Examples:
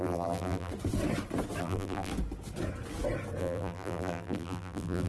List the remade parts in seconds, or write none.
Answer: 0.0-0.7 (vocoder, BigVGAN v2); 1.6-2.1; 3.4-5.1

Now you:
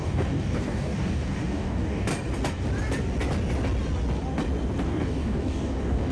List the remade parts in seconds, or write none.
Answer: 0.0-2.1 (codec, DAC); 4.9-6.1